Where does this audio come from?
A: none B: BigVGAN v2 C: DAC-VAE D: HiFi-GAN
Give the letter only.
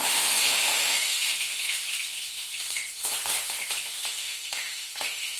C